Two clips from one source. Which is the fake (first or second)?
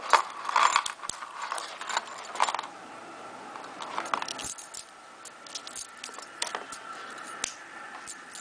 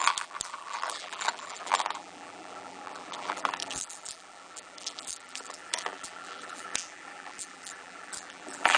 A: second